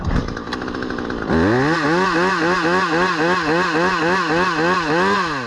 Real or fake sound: real